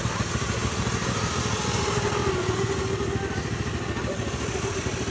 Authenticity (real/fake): real